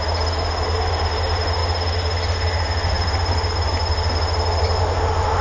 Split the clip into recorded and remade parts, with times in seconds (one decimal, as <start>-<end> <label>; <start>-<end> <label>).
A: 0.0-5.4 recorded